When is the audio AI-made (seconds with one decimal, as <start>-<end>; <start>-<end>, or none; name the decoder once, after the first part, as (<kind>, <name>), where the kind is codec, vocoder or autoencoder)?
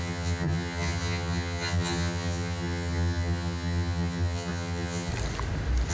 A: 0.0-5.1 (vocoder, HiFi-GAN)